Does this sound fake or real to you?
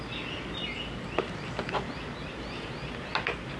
real